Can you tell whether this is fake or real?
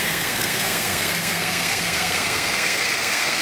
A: fake